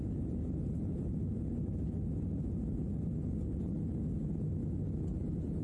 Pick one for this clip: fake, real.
real